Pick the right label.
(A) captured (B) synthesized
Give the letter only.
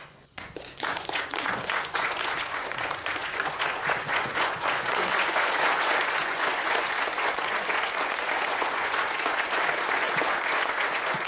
B